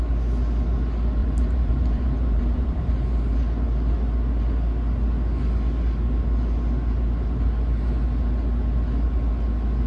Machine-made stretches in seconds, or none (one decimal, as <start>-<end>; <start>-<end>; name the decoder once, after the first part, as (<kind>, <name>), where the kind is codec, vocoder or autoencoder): 1.2-2.9 (vocoder, BigVGAN v2)